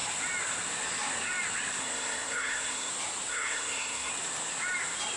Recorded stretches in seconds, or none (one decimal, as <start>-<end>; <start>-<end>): 0.0-1.8; 2.9-3.3; 4.1-5.2